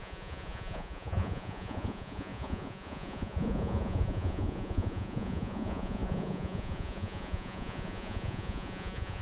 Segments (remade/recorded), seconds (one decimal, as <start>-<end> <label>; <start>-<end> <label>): 0.0-9.2 remade